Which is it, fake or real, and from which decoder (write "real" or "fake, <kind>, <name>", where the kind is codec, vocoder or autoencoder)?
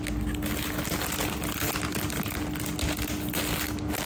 real